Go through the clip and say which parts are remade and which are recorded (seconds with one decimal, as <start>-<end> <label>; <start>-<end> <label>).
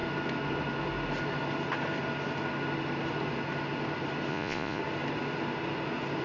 0.0-4.3 recorded; 4.3-4.8 remade; 4.8-6.2 recorded